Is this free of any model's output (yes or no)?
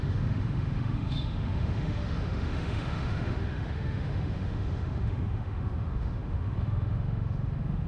no